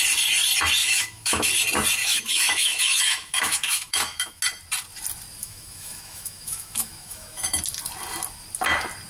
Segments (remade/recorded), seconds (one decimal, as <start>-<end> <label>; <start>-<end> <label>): 0.0-0.8 recorded; 0.8-1.5 remade; 1.5-2.0 recorded; 2.0-4.4 remade; 4.4-5.4 recorded; 5.4-7.6 remade; 7.6-9.1 recorded